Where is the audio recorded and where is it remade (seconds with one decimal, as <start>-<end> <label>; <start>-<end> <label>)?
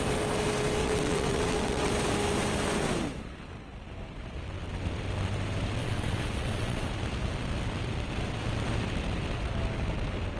0.0-0.8 recorded; 0.8-1.9 remade; 1.9-5.8 recorded; 5.8-6.9 remade; 6.9-10.4 recorded